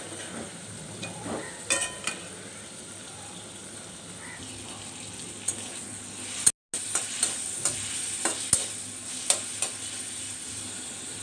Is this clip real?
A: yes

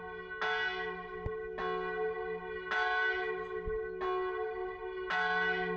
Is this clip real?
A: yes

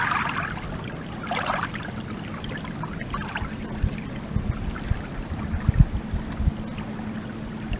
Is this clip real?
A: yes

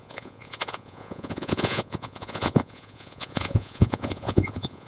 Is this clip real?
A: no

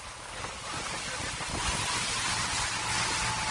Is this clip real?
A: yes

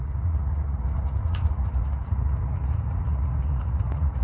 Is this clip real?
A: no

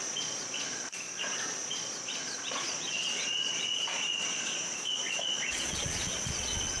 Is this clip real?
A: no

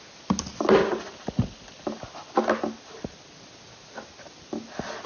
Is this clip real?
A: yes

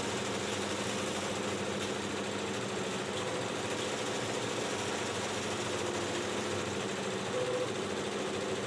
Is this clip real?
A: yes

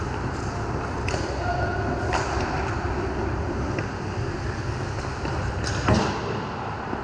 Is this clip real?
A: yes